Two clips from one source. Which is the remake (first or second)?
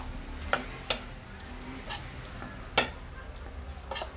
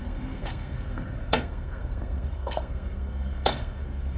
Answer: second